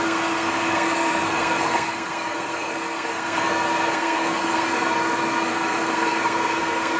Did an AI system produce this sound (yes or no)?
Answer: yes